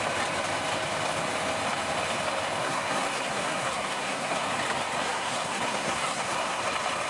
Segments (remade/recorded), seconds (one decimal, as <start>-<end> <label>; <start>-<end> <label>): 0.0-2.6 recorded; 2.6-4.5 remade; 4.5-5.0 recorded; 5.0-6.6 remade; 6.6-7.1 recorded